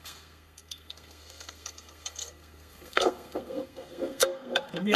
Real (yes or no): no